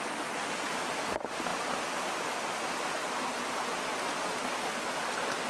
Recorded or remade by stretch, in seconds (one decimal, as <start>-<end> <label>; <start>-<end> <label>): 0.0-5.5 recorded